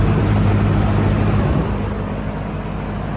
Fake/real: real